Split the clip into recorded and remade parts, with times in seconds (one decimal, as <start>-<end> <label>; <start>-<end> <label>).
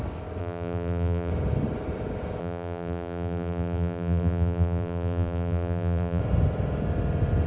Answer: 0.0-0.4 recorded; 0.4-1.3 remade; 1.3-2.4 recorded; 2.4-6.2 remade; 6.2-7.5 recorded